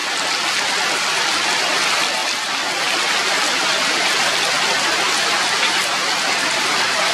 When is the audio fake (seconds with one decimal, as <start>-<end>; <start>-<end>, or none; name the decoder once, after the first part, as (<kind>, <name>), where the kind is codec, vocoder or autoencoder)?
0.6-2.2 (vocoder, BigVGAN v2); 3.3-6.0